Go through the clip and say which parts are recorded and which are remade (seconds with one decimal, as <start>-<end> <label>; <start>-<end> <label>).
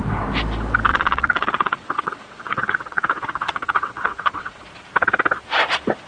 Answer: 0.0-0.9 recorded; 0.9-4.6 remade; 4.6-6.1 recorded